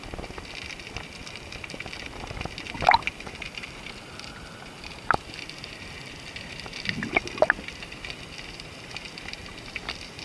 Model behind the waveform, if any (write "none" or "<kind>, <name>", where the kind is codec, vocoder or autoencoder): none